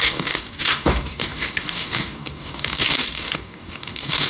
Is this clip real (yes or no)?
no